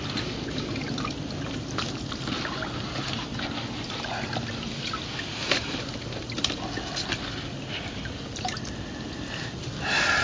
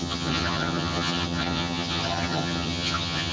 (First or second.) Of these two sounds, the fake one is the second